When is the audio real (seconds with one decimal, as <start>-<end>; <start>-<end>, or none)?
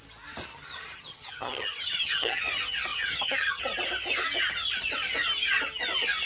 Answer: 0.0-0.5; 2.4-2.9; 3.6-6.3